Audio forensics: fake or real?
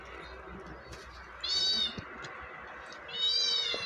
real